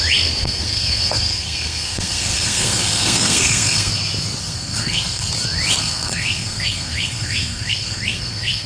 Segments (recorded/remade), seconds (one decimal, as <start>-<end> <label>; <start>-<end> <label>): 0.0-0.4 recorded; 0.4-3.9 remade; 3.9-4.4 recorded; 4.4-5.3 remade; 5.3-5.8 recorded; 5.8-8.7 remade